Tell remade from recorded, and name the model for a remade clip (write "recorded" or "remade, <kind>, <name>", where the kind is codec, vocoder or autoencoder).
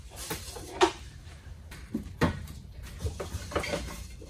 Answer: remade, vocoder, BigVGAN v2